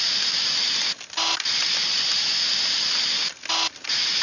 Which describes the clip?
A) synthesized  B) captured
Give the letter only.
B